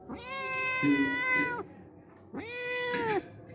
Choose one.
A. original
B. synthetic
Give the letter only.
A